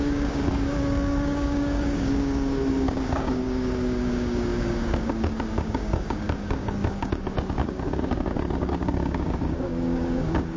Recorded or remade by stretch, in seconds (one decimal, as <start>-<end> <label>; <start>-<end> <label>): 0.0-10.6 remade